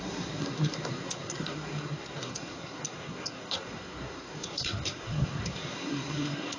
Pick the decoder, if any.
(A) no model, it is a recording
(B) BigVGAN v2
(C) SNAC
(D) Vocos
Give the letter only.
C